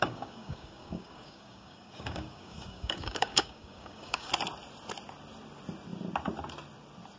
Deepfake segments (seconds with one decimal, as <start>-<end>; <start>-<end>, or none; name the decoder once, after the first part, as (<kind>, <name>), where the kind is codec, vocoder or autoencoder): 0.0-4.3 (codec, DAC)